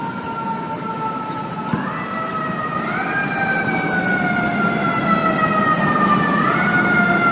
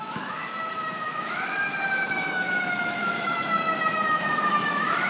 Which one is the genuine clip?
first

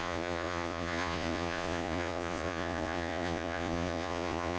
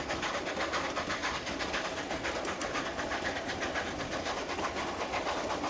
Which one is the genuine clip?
second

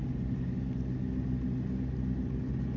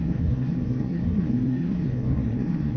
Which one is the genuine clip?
first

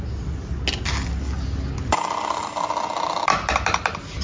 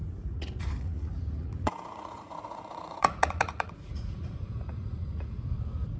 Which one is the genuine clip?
first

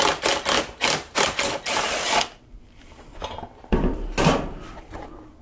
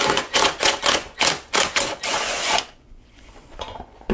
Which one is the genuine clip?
first